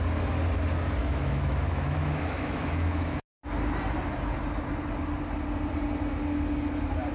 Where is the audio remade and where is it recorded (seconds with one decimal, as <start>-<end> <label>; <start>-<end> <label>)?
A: 0.0-1.0 recorded; 1.0-3.2 remade; 3.2-7.1 recorded